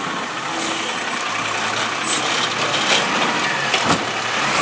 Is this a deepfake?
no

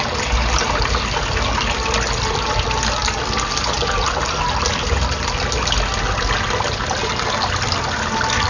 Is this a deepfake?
no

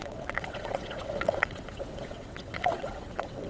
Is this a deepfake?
yes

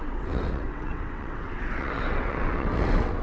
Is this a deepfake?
yes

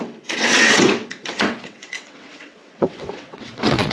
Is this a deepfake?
yes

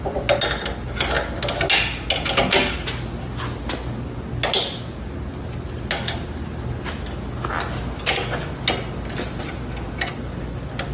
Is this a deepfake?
no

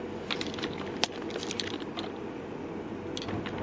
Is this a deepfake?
no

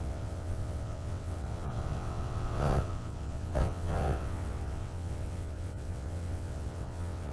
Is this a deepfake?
yes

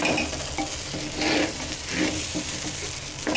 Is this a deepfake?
no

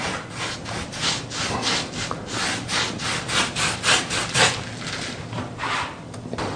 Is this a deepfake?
no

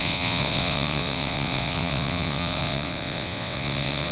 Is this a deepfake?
yes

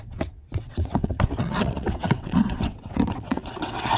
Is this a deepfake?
yes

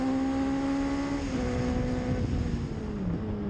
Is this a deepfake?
no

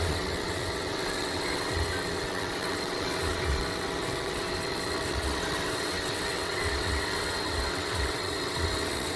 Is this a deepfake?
yes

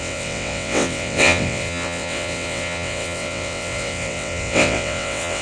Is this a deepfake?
yes